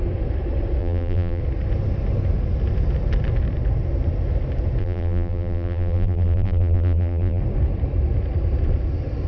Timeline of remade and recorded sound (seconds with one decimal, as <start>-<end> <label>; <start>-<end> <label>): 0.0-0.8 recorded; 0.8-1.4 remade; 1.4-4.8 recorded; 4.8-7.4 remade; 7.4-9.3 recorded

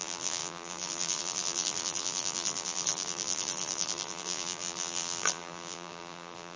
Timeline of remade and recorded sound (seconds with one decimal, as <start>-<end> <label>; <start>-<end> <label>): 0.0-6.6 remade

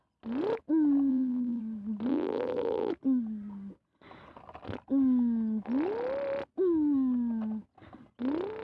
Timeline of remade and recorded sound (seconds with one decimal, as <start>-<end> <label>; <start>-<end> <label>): 0.0-1.1 recorded; 1.1-1.6 remade; 1.6-2.1 recorded; 2.1-2.9 remade; 2.9-8.6 recorded

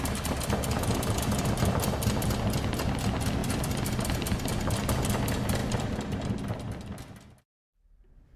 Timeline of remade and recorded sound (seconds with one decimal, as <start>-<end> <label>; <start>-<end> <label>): 0.0-3.4 recorded; 3.4-4.8 remade; 4.8-5.6 recorded; 5.6-6.3 remade; 6.3-8.4 recorded

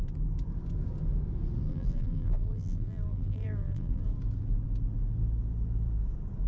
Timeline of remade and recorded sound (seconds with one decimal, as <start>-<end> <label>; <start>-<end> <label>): 0.0-1.7 recorded; 1.7-4.0 remade; 4.0-6.5 recorded

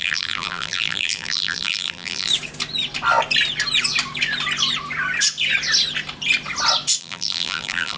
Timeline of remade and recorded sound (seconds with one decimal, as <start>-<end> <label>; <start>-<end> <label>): 0.0-2.3 remade; 2.3-7.0 recorded; 7.0-8.0 remade